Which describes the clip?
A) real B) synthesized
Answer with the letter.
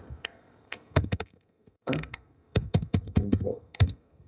B